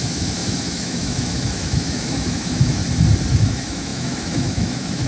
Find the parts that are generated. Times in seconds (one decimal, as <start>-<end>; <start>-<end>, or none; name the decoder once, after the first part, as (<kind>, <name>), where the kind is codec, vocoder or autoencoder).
0.0-2.8 (autoencoder, DAC-VAE); 3.3-5.1